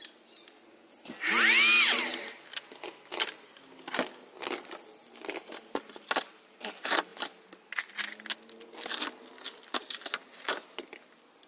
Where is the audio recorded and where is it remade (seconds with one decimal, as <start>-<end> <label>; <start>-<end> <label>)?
0.0-11.5 recorded